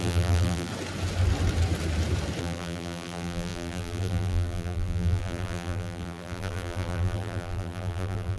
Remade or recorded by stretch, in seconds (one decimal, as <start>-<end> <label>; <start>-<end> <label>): 0.0-0.7 remade; 0.7-2.4 recorded; 2.4-8.4 remade